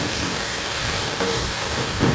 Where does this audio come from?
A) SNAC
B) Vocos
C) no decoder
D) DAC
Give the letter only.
D